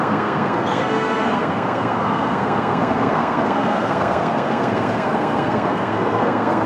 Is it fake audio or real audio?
fake